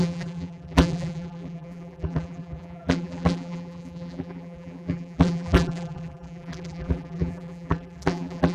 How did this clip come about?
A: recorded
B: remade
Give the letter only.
B